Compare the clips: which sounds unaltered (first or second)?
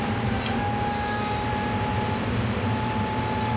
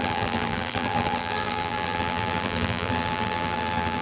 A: first